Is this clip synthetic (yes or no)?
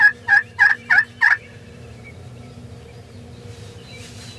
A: yes